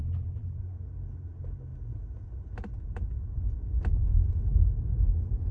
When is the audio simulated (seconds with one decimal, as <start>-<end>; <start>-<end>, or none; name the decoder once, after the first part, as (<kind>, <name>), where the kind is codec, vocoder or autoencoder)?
0.0-0.6 (vocoder, BigVGAN v2)